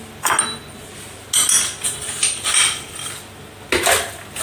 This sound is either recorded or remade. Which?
recorded